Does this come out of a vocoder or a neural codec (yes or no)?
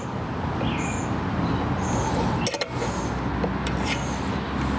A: no